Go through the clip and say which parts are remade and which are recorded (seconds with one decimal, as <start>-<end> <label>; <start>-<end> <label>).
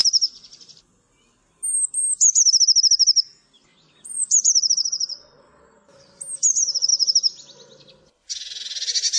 0.0-0.6 remade; 0.6-3.7 recorded; 3.7-5.6 remade; 5.6-9.2 recorded